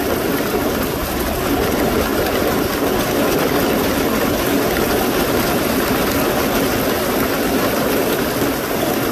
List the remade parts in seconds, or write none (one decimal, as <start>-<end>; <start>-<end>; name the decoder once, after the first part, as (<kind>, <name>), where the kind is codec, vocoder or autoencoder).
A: none